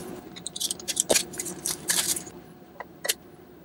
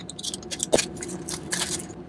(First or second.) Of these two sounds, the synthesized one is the first